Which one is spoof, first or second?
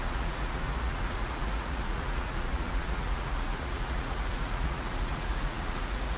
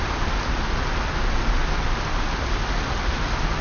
first